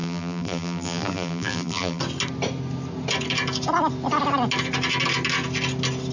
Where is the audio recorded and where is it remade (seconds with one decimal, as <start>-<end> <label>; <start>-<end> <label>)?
0.0-2.0 remade; 2.0-6.1 recorded